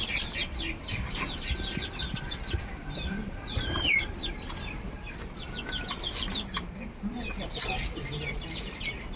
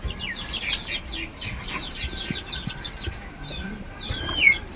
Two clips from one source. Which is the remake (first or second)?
first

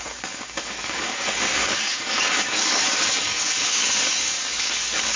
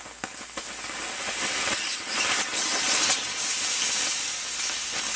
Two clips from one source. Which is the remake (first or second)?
first